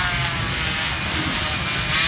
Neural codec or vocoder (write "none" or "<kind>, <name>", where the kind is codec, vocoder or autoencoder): none